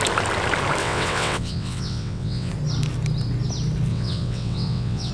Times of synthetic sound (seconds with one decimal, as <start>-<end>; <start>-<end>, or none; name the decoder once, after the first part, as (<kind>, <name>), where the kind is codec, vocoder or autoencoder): 0.8-2.5 (vocoder, WaveNeXt); 3.9-5.1